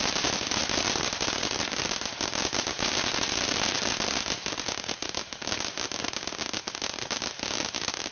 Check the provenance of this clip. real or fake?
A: real